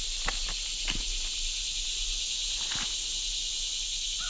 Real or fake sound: real